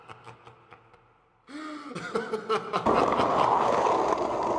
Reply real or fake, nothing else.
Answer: real